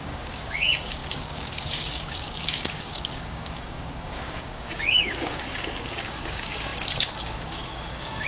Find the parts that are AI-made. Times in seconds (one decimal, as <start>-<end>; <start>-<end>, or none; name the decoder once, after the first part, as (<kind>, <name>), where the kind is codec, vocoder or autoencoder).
0.0-8.3 (codec, DAC)